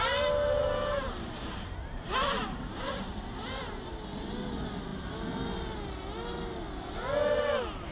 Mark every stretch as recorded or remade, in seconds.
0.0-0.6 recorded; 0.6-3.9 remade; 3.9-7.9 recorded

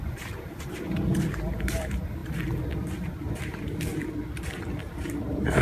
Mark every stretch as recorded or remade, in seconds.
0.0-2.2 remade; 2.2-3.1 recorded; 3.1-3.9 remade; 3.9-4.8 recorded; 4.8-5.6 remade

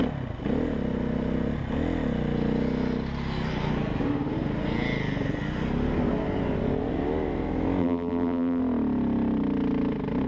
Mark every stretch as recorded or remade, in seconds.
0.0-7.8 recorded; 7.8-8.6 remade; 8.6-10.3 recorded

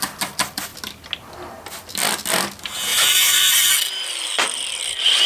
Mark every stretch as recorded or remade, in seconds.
0.0-2.9 recorded; 2.9-3.7 remade; 3.7-5.3 recorded

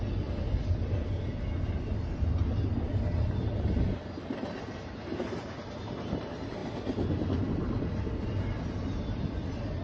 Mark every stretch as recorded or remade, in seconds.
0.0-9.8 recorded

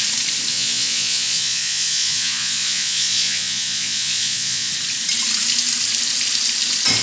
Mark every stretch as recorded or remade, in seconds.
0.0-0.5 recorded; 0.5-4.7 remade; 4.7-7.0 recorded